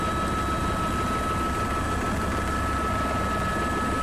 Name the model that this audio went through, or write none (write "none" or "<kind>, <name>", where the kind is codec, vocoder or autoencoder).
none